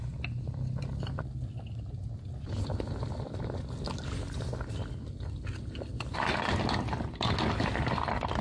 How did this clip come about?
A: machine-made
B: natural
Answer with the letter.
B